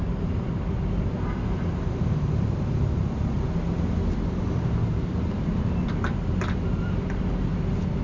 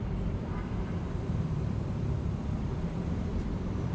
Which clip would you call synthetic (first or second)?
second